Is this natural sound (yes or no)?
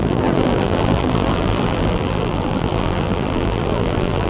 no